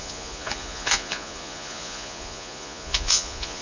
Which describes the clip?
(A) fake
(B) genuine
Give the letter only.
A